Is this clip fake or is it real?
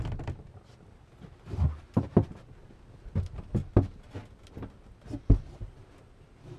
real